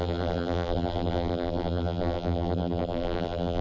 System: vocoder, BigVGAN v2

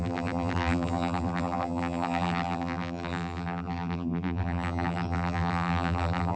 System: vocoder, BigVGAN v2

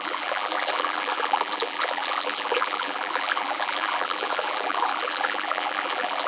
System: vocoder, BigVGAN v2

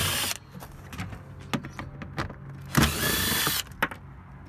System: none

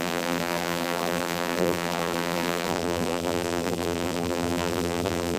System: vocoder, BigVGAN v2